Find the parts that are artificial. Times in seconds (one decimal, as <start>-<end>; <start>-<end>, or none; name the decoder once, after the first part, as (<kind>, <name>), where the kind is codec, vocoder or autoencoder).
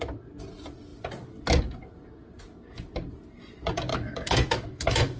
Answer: 3.9-5.2 (autoencoder, DAC-VAE)